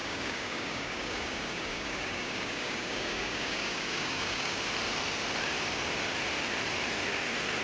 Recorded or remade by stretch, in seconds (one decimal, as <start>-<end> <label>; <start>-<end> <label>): 0.0-4.6 remade; 4.6-7.6 recorded